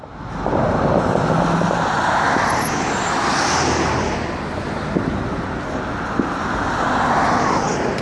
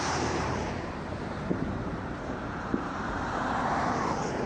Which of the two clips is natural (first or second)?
first